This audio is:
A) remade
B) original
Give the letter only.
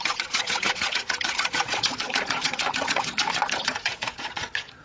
A